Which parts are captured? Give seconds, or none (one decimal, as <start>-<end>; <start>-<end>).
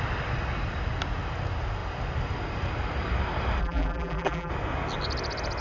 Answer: 0.0-3.6; 4.5-5.6